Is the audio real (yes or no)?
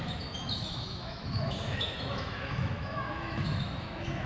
no